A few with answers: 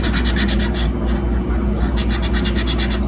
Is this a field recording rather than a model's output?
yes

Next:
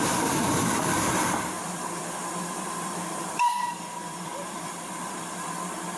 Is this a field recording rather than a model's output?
no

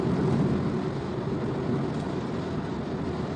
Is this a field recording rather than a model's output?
yes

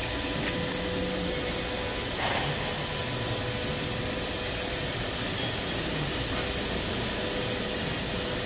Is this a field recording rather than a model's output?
yes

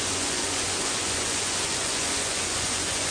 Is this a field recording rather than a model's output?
no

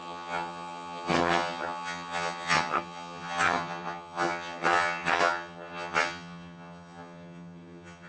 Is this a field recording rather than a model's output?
no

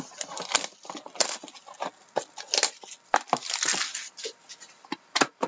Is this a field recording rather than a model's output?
yes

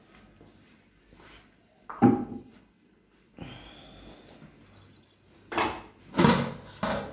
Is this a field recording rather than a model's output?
yes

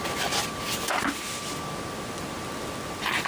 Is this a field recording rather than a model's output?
yes